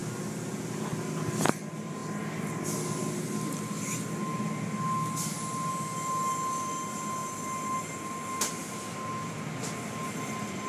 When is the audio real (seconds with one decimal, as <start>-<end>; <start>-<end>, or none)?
0.0-10.7